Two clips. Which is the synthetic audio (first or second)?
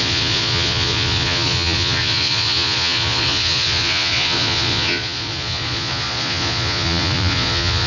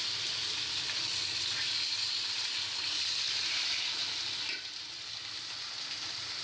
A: first